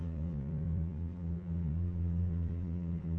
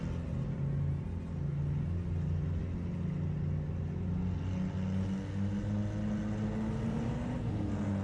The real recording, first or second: second